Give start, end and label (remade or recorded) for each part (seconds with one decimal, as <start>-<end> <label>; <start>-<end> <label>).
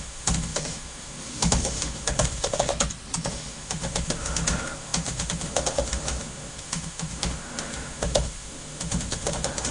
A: 0.0-2.7 remade; 2.7-3.3 recorded; 3.3-9.7 remade